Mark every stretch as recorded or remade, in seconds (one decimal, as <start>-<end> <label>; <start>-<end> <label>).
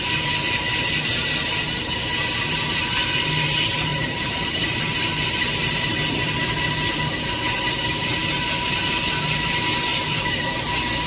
0.0-3.9 recorded; 3.9-4.8 remade; 4.8-8.0 recorded; 8.0-8.9 remade; 8.9-9.9 recorded; 9.9-10.4 remade; 10.4-11.1 recorded